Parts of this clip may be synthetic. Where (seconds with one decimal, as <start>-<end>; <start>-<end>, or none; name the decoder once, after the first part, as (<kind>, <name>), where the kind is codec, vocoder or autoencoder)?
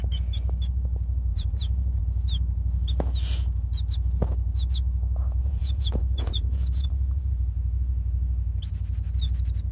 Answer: 1.3-2.0 (vocoder, Vocos); 5.4-7.3